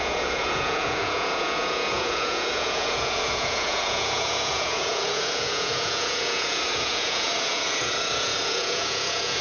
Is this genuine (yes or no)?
no